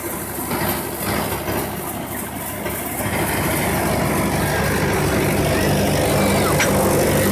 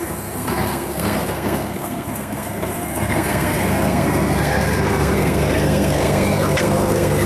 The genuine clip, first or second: first